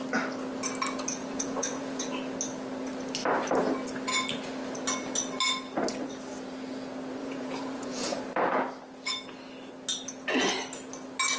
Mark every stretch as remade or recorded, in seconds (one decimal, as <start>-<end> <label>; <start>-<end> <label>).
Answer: 0.0-1.2 recorded; 1.2-2.0 remade; 2.0-7.2 recorded; 7.2-8.2 remade; 8.2-11.4 recorded